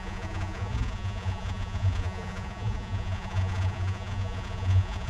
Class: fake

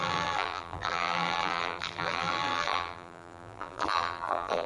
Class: fake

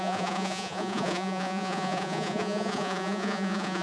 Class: fake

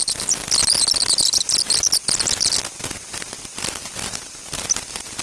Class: real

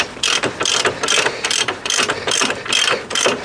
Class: fake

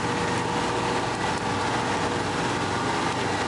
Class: real